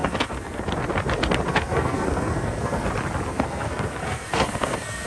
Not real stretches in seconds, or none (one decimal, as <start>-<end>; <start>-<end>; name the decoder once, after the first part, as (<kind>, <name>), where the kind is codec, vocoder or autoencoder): 0.0-0.6 (codec, SNAC); 1.5-2.9; 3.3-5.1